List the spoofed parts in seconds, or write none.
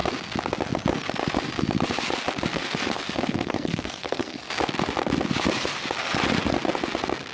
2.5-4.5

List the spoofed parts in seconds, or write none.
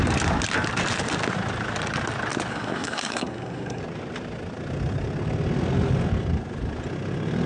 2.5-3.8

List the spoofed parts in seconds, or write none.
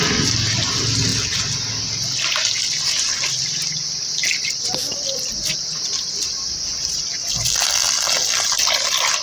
1.1-1.7; 4.2-6.2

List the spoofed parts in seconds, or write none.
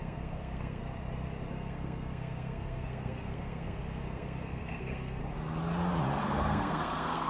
0.0-0.8; 1.5-5.2; 6.2-7.3